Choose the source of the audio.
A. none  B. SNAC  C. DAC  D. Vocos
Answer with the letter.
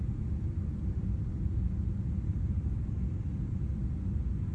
A